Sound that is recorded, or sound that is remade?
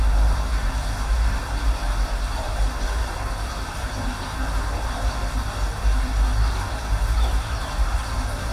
remade